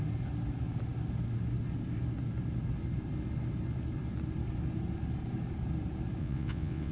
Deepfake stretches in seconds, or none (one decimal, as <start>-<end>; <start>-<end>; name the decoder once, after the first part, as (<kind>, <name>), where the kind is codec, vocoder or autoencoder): 6.2-6.9 (vocoder, WaveNeXt)